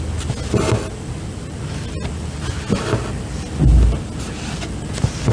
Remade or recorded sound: recorded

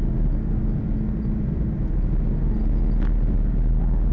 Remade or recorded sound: recorded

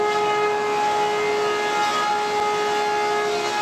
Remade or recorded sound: recorded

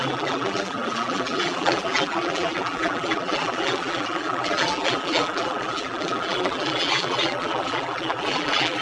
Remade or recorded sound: remade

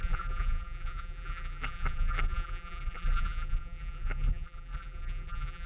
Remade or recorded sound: remade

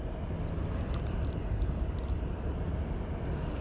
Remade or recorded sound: recorded